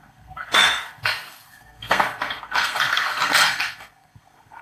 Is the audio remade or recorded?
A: remade